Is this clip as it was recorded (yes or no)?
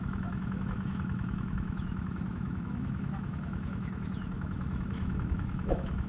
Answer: no